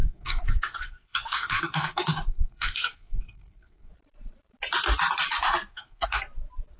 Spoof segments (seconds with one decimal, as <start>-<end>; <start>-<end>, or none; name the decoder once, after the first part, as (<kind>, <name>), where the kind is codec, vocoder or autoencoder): 0.0-3.9 (codec, SNAC); 5.7-6.2

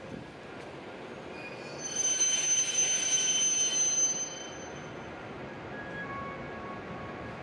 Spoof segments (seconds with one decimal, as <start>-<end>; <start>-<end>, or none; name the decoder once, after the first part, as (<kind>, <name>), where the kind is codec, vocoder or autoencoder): none

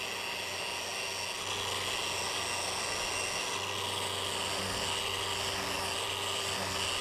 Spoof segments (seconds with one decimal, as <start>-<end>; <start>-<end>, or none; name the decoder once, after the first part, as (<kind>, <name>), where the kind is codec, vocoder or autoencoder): none

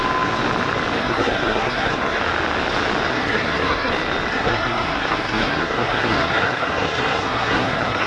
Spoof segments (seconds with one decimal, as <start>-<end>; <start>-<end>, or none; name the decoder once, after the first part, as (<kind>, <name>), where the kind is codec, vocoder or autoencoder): 1.0-2.2 (codec, SNAC); 3.1-3.9; 4.3-8.1